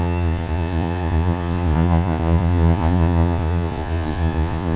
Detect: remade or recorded remade